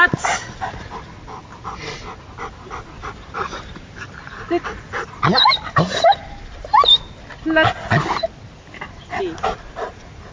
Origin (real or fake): real